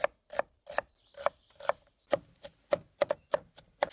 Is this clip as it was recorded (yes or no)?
yes